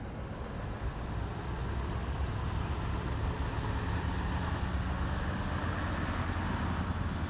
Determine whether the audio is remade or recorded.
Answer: recorded